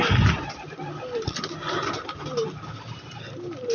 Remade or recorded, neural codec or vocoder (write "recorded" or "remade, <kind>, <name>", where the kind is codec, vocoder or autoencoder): recorded